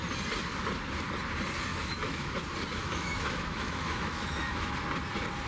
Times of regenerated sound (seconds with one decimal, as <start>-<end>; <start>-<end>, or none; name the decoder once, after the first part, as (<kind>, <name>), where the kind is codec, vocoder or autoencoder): 1.7-2.3 (autoencoder, DAC-VAE); 2.8-4.7